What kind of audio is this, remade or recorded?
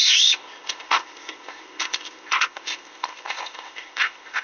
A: remade